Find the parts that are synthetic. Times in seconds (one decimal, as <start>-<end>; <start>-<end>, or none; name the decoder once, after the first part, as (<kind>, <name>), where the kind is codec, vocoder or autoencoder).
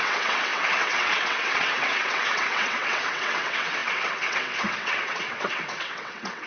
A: 0.0-6.5 (vocoder, WaveNeXt)